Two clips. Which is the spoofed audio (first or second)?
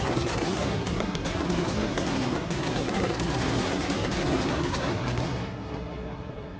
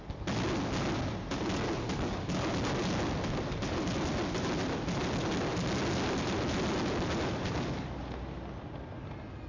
first